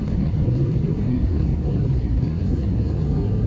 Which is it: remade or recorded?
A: remade